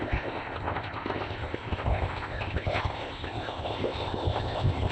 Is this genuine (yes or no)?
no